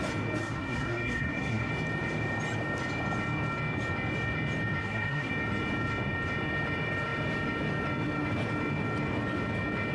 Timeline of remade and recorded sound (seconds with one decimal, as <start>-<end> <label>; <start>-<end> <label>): 0.0-0.4 recorded; 0.4-1.7 remade; 1.7-4.8 recorded; 4.8-5.3 remade; 5.3-9.9 recorded